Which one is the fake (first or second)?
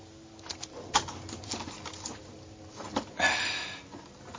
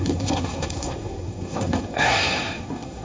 second